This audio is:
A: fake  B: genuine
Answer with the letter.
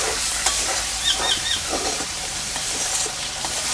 A